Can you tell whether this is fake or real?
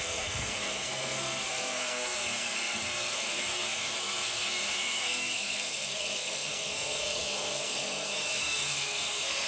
fake